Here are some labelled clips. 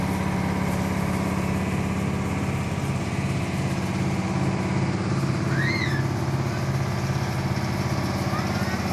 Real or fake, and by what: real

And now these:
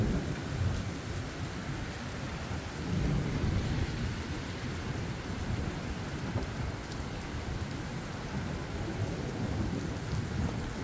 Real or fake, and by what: real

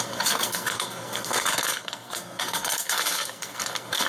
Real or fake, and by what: fake, codec, SNAC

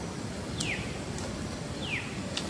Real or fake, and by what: real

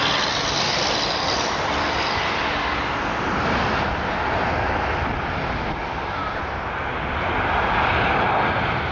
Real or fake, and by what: real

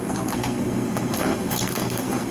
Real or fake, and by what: fake, codec, SNAC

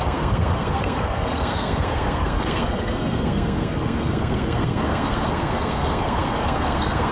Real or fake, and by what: fake, codec, SNAC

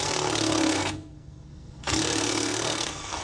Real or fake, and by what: fake, codec, SNAC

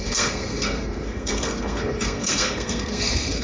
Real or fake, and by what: fake, codec, SNAC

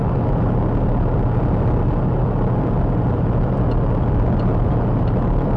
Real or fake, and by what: real